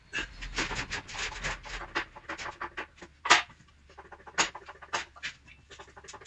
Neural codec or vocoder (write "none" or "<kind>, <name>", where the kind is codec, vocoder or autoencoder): none